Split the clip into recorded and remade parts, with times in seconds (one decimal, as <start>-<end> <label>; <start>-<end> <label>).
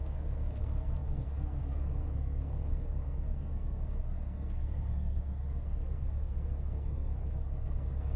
0.0-8.2 remade